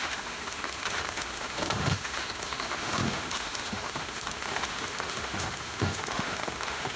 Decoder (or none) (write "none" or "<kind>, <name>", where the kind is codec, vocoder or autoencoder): autoencoder, DAC-VAE